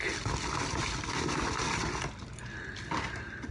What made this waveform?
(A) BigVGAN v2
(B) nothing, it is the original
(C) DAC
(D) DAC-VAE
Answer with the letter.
B